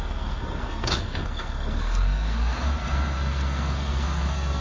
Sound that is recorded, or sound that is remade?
remade